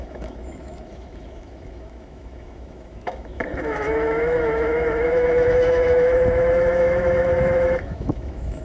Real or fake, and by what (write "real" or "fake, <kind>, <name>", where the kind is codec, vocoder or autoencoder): fake, autoencoder, DAC-VAE